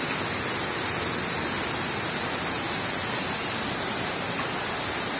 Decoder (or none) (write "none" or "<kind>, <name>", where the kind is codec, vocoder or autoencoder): none